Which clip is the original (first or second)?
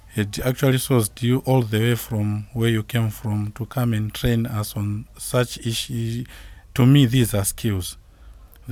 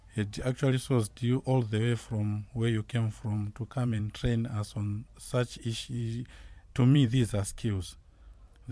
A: first